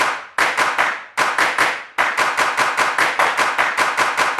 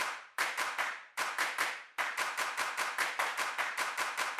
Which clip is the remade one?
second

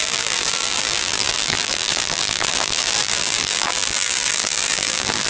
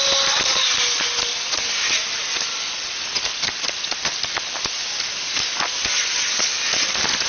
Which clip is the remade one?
first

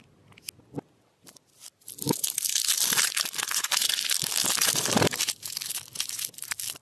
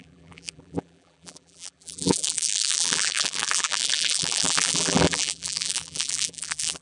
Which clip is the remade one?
second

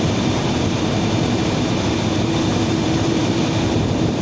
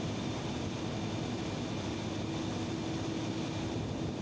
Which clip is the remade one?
first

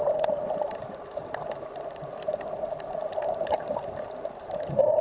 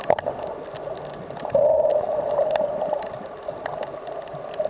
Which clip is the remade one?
first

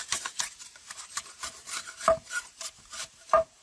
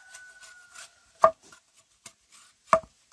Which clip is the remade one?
first